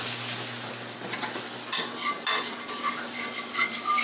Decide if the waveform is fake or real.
real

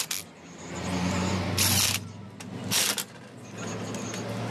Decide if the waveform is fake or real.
real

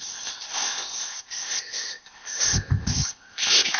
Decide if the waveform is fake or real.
fake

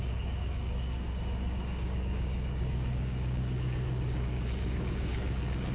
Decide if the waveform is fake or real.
fake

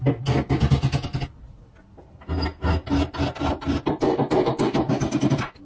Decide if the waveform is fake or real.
real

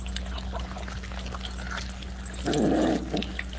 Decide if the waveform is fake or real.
real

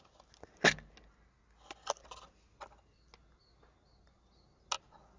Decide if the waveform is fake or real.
real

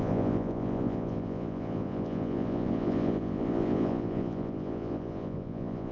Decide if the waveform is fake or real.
fake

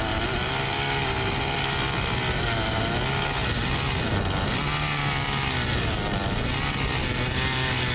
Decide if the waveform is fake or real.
real